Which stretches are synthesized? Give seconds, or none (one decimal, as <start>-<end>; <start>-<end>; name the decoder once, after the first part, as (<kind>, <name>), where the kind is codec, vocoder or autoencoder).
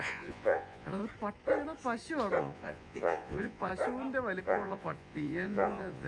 0.0-1.0 (vocoder, Vocos); 2.4-3.7; 4.4-6.1